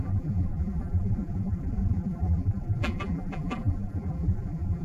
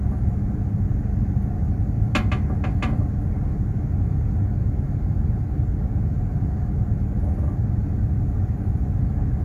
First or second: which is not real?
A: first